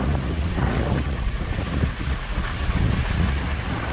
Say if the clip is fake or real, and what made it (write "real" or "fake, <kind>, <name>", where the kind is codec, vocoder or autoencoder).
fake, vocoder, Vocos